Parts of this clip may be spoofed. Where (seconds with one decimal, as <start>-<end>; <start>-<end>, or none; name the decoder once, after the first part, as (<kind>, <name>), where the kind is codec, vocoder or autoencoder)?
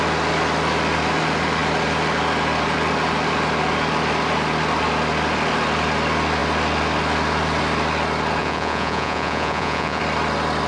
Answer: 8.4-10.0 (vocoder, Vocos)